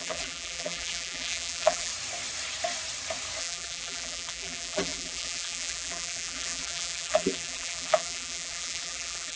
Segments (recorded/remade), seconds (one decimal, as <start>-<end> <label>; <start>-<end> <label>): 0.0-1.9 remade; 1.9-3.4 recorded; 3.4-9.4 remade